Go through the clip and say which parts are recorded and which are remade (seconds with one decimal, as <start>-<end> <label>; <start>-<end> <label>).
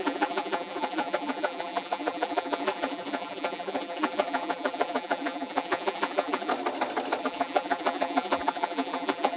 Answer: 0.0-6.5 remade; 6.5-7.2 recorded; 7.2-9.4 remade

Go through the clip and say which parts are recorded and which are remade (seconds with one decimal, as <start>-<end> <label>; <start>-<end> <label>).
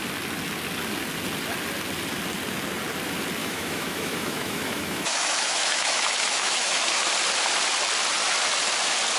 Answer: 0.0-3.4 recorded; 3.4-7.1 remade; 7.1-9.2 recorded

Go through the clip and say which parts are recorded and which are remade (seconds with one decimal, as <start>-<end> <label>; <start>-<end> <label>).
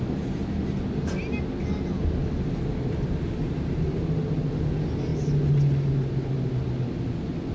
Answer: 0.0-7.5 recorded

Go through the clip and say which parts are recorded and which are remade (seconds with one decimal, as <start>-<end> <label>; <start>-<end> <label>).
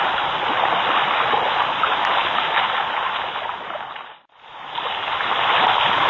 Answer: 0.0-6.1 recorded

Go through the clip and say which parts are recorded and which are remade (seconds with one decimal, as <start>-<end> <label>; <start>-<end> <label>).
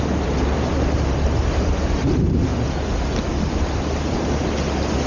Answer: 0.0-2.5 remade; 2.5-3.4 recorded; 3.4-4.4 remade; 4.4-5.1 recorded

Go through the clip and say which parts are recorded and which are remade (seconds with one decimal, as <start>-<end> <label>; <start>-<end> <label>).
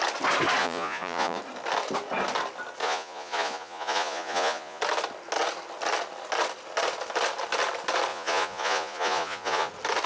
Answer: 0.0-0.6 recorded; 0.6-1.4 remade; 1.4-2.8 recorded; 2.8-4.8 remade; 4.8-8.1 recorded; 8.1-9.7 remade; 9.7-10.1 recorded